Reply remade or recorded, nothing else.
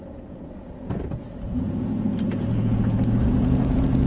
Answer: remade